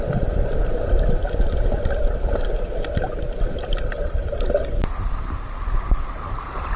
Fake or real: real